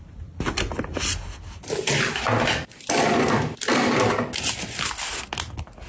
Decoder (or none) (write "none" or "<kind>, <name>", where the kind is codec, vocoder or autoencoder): none